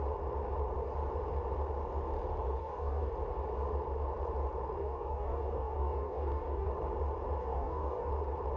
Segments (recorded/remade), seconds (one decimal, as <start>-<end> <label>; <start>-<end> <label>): 0.0-2.6 recorded; 2.6-3.1 remade; 3.1-4.8 recorded; 4.8-6.7 remade; 6.7-7.4 recorded; 7.4-8.1 remade; 8.1-8.6 recorded